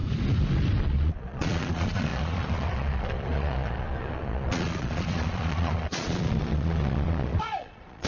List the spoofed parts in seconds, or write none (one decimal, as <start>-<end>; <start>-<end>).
0.8-8.1